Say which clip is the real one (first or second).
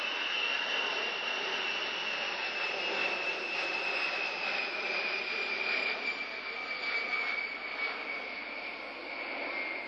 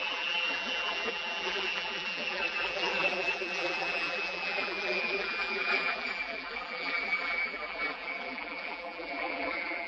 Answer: first